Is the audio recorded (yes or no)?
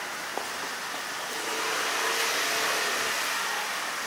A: yes